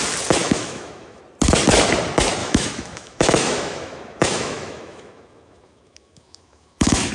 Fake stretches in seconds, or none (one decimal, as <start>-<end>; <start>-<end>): 0.4-1.2; 2.4-7.1